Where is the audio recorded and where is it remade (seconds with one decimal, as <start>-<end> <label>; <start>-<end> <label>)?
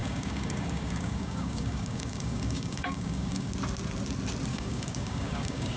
0.0-3.5 remade; 3.5-4.5 recorded; 4.5-5.8 remade